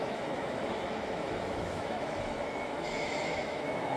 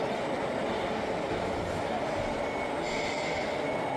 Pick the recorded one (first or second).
second